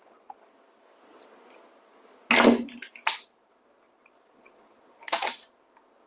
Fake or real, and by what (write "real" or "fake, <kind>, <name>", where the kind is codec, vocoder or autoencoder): real